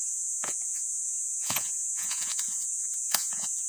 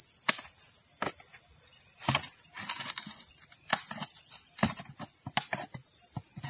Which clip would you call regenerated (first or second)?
first